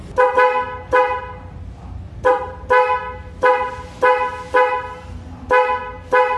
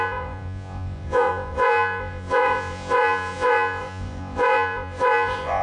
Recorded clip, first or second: first